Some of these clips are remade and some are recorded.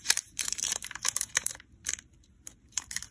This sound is remade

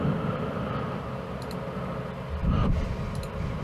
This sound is recorded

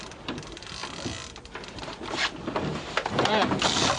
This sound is recorded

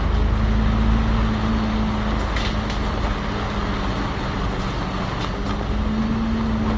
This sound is recorded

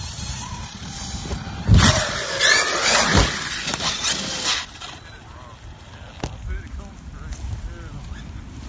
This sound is recorded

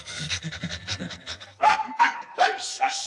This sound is remade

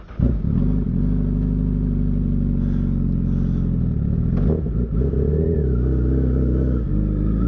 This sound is recorded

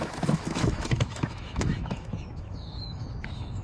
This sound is remade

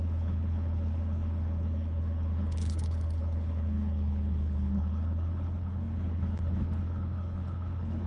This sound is remade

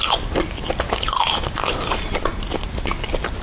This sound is recorded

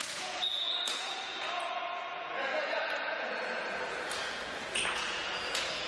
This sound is remade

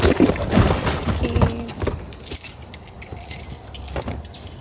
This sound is recorded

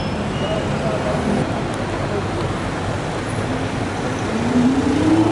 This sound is recorded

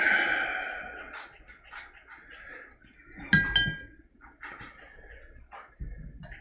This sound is recorded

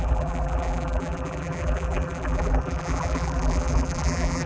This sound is remade